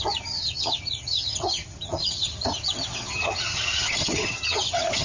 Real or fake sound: fake